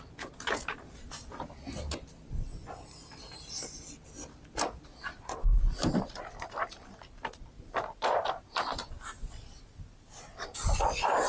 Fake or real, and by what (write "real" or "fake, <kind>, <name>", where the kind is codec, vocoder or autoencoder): real